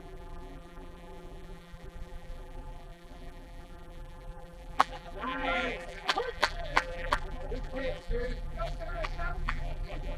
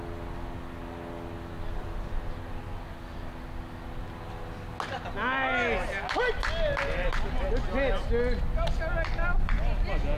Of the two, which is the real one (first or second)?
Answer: second